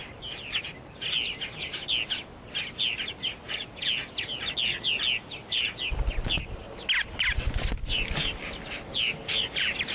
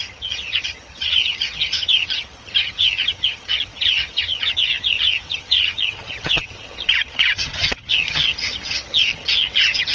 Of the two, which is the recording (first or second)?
first